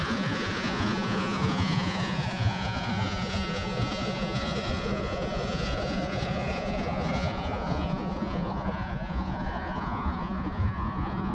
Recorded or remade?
remade